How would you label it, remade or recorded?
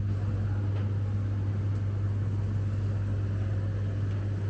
recorded